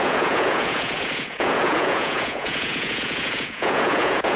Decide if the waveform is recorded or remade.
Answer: remade